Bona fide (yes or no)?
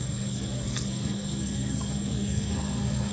no